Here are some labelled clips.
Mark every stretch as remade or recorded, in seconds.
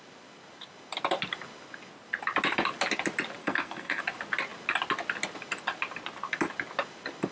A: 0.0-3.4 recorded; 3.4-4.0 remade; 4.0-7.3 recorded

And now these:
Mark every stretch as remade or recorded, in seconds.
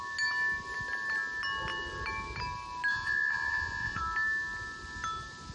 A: 0.0-2.9 recorded; 2.9-4.0 remade; 4.0-5.5 recorded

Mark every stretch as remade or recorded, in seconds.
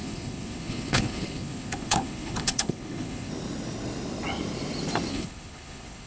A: 0.0-3.3 remade; 3.3-5.1 recorded; 5.1-6.1 remade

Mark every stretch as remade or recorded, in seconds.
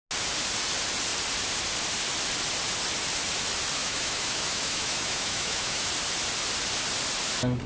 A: 0.0-3.8 recorded; 3.8-5.9 remade; 5.9-7.7 recorded